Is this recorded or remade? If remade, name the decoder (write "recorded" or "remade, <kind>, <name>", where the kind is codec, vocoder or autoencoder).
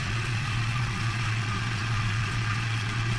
remade, vocoder, Vocos